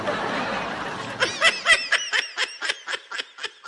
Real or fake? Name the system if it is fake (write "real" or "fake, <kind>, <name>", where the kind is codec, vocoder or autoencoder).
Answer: real